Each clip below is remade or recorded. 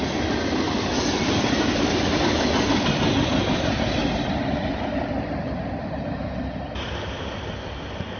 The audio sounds recorded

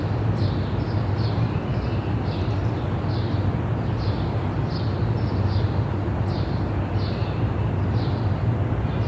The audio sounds recorded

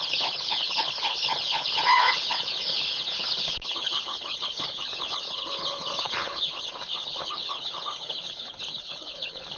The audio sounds remade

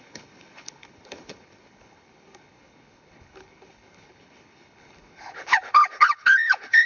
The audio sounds remade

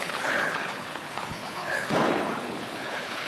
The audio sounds remade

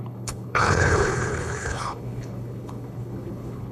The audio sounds remade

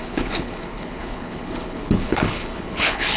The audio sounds remade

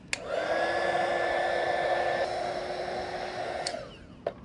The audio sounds recorded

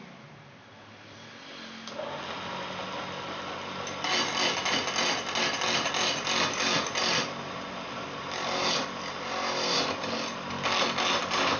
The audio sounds recorded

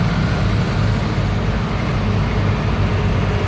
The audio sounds recorded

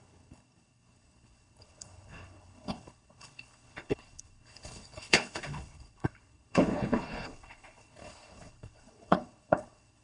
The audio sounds remade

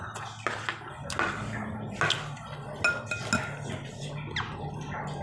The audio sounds recorded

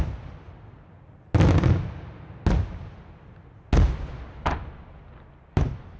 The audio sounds recorded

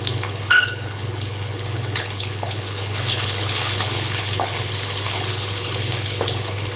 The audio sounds remade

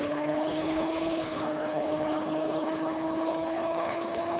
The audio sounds remade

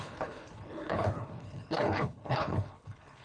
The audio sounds remade